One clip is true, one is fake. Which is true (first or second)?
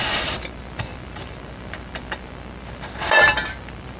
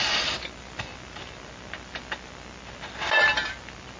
second